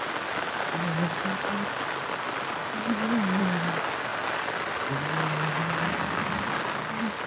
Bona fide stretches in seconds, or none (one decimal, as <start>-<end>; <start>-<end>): 0.0-7.3